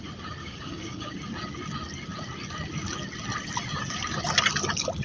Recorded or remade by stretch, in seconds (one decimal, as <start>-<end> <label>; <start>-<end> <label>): 0.0-0.4 recorded; 0.4-1.1 remade; 1.1-5.0 recorded